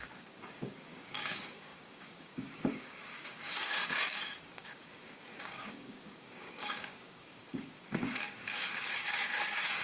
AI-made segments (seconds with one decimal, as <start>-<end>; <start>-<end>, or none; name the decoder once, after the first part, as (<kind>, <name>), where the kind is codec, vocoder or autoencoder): 0.0-9.8 (codec, DAC)